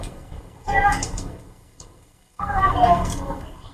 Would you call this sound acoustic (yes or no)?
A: no